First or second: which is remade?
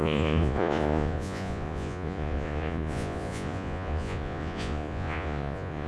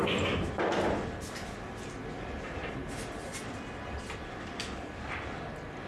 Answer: first